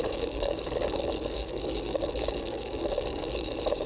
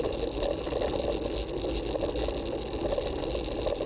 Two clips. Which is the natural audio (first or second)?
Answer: second